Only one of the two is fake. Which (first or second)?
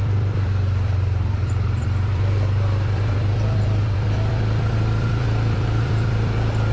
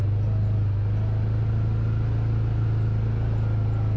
first